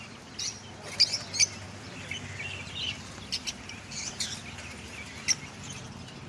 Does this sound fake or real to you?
real